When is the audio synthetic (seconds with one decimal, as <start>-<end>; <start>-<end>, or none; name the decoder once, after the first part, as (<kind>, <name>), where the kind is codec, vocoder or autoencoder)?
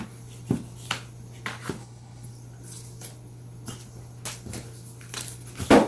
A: 1.8-2.3 (codec, HILCodec)